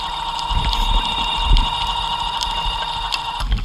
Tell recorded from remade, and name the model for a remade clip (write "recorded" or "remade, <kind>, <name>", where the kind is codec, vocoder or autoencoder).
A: recorded